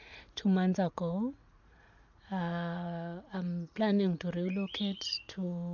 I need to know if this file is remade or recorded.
remade